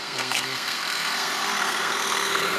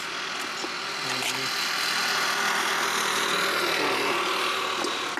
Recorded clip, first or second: second